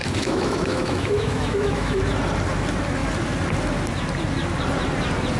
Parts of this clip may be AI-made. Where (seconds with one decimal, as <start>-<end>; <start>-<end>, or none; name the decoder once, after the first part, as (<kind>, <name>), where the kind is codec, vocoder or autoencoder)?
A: 0.0-2.0 (autoencoder, DAC-VAE)